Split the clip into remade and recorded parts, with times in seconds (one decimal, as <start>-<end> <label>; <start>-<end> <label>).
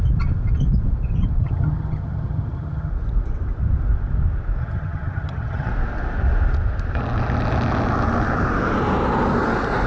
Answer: 0.0-1.4 recorded; 1.4-2.9 remade; 2.9-4.6 recorded; 4.6-5.7 remade; 5.7-9.9 recorded